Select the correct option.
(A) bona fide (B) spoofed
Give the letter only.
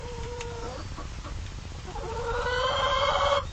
B